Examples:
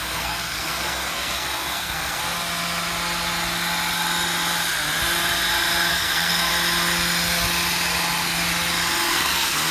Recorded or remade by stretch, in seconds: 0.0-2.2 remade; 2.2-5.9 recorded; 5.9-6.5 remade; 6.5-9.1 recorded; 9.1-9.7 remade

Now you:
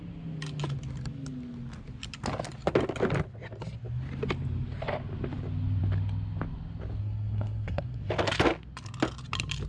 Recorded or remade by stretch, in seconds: 0.0-7.0 recorded; 7.0-8.1 remade; 8.1-9.7 recorded

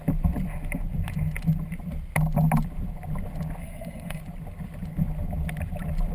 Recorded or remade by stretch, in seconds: 0.0-3.6 recorded; 3.6-4.2 remade; 4.2-6.1 recorded

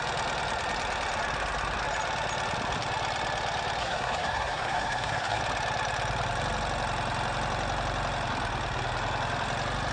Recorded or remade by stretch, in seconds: 0.0-3.8 recorded; 3.8-5.4 remade; 5.4-9.9 recorded

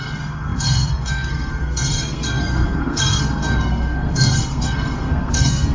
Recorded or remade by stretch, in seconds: 0.0-5.7 remade